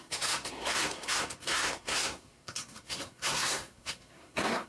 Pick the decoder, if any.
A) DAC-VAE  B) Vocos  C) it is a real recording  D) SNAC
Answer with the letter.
D